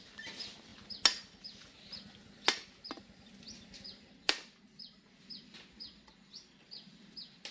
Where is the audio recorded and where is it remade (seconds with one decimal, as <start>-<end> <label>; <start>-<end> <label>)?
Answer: 0.0-7.5 recorded